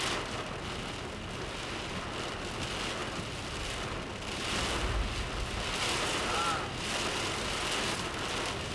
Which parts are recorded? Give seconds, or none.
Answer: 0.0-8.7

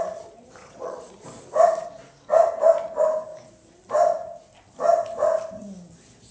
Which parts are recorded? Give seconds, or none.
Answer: 0.0-0.6; 1.1-6.3

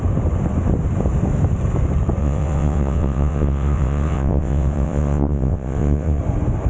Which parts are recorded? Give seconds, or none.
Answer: 0.0-2.2; 6.2-6.7

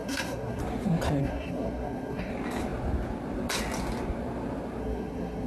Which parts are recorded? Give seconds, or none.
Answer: 0.6-1.2; 2.3-4.8

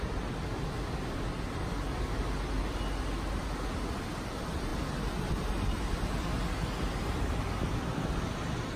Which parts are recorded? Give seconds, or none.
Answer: 0.0-8.8